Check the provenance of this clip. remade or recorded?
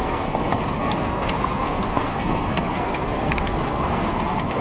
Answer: remade